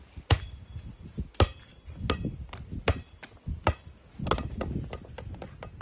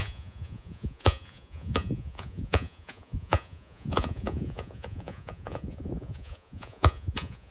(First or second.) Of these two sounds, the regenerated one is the second